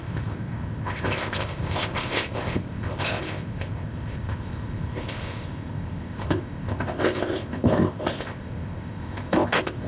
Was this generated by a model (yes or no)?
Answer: yes